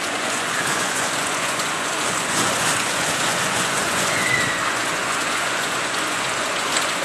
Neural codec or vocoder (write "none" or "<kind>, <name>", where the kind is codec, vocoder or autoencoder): vocoder, Vocos